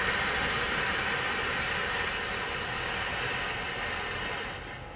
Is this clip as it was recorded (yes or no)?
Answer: yes